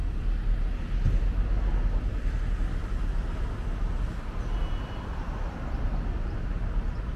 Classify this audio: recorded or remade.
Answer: recorded